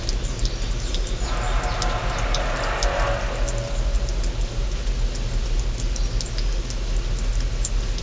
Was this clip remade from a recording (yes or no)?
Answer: no